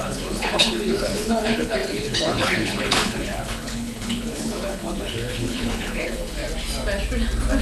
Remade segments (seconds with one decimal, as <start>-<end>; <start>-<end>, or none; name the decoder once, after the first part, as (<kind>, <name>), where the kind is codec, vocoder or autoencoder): 0.0-6.4 (codec, HILCodec)

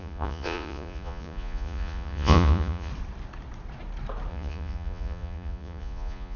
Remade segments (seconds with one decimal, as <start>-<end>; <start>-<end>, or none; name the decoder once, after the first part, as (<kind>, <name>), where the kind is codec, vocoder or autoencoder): 0.0-2.9 (vocoder, Vocos); 4.3-6.4